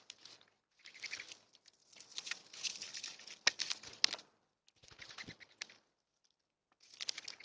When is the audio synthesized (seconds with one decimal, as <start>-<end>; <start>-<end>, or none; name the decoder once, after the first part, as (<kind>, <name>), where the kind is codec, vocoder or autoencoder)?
none